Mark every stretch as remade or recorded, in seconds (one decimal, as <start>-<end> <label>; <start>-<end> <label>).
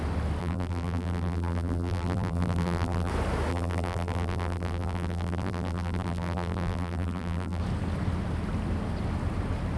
0.0-0.4 recorded; 0.4-3.1 remade; 3.1-3.5 recorded; 3.5-7.6 remade; 7.6-9.8 recorded